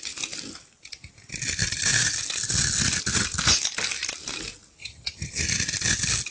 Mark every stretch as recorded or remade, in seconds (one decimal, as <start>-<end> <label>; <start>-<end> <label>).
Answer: 0.0-4.8 recorded; 4.8-5.4 remade; 5.4-6.3 recorded